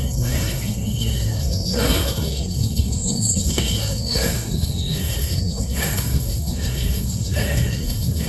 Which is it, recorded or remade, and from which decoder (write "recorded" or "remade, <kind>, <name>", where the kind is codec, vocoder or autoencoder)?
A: remade, codec, SNAC